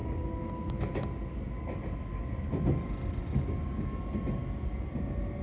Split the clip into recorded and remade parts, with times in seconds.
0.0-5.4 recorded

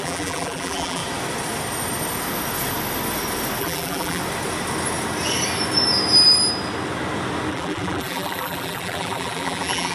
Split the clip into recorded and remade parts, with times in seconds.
0.0-1.0 remade; 1.0-3.6 recorded; 3.6-4.2 remade; 4.2-7.5 recorded; 7.5-9.9 remade

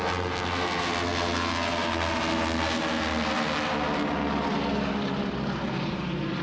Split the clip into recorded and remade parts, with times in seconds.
0.0-6.4 recorded

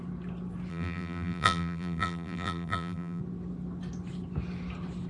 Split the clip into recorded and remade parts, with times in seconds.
0.0-0.7 recorded; 0.7-3.2 remade; 3.2-5.1 recorded

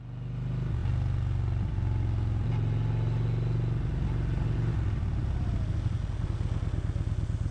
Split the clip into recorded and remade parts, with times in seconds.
0.0-7.5 recorded

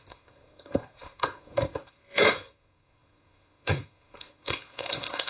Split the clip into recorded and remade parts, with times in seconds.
0.0-5.3 remade

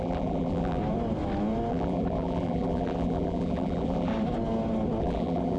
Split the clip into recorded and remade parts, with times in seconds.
0.0-0.8 remade; 0.8-1.7 recorded; 1.7-4.1 remade; 4.1-5.0 recorded; 5.0-5.6 remade

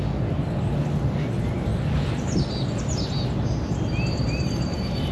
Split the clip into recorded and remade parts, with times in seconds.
0.0-5.1 recorded